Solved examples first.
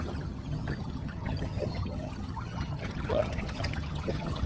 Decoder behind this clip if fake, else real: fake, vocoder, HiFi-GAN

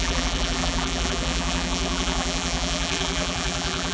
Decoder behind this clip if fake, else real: fake, vocoder, BigVGAN v2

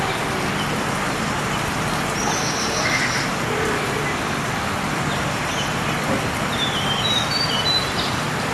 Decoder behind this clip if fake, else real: fake, vocoder, BigVGAN v2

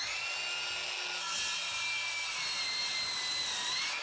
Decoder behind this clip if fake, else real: real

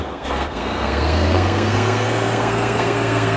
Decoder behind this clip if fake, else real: fake, codec, SNAC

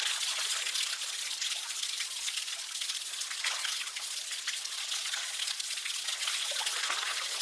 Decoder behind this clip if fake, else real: fake, vocoder, Vocos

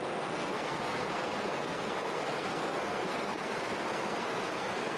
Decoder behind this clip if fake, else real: fake, codec, SNAC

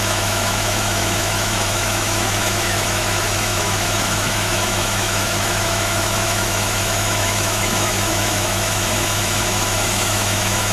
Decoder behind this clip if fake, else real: fake, autoencoder, DAC-VAE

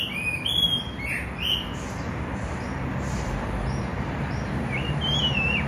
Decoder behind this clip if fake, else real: fake, vocoder, BigVGAN v2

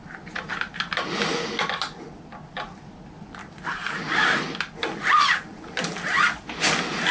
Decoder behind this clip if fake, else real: real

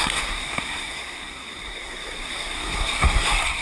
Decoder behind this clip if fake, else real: fake, codec, SNAC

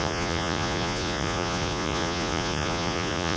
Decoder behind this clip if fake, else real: fake, vocoder, Vocos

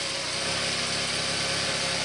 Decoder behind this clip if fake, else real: real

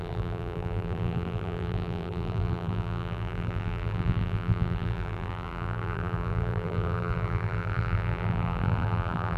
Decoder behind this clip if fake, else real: fake, vocoder, BigVGAN v2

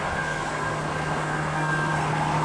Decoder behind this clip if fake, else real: fake, codec, SNAC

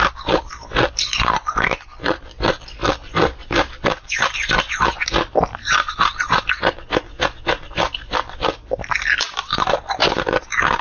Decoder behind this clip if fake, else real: real